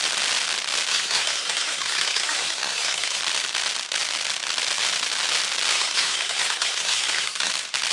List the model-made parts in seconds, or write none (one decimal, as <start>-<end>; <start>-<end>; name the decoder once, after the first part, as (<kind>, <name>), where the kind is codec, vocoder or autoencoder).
0.9-3.2 (codec, SNAC); 5.7-7.5